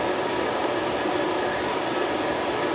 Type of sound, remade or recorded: recorded